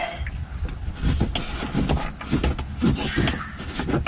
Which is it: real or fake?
real